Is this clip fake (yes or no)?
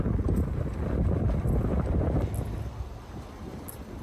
no